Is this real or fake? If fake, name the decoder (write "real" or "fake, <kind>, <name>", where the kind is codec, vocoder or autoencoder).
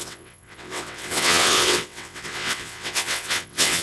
fake, vocoder, WaveNeXt